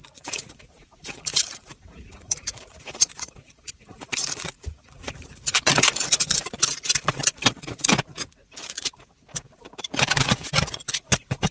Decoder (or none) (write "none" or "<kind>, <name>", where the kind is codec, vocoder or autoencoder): vocoder, Vocos